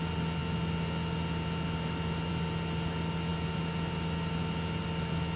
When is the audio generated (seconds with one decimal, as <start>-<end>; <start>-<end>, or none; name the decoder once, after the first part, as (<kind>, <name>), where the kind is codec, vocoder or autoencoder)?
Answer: none